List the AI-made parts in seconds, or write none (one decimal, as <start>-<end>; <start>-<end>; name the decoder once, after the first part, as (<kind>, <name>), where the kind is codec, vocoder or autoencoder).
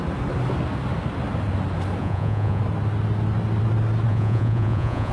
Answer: 2.0-2.6 (vocoder, Vocos); 4.1-5.1